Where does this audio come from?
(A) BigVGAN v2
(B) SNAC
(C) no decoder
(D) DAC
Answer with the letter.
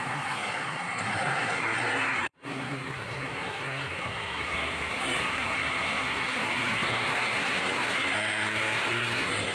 B